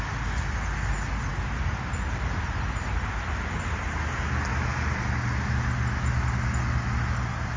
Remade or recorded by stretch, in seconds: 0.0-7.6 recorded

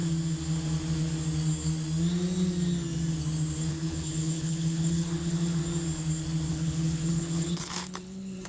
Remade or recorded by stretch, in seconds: 0.0-3.7 recorded; 3.7-5.6 remade; 5.6-6.5 recorded; 6.5-8.5 remade

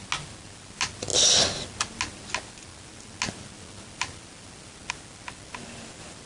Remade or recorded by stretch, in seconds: 0.0-6.3 recorded

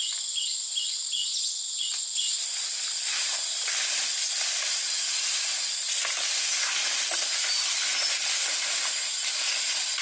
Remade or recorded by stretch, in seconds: 0.0-10.0 recorded

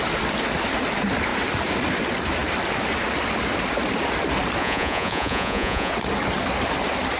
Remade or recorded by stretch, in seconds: 0.0-4.6 recorded; 4.6-5.9 remade; 5.9-7.2 recorded